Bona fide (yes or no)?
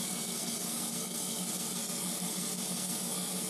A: no